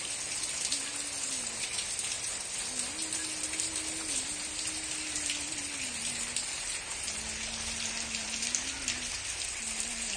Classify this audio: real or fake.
real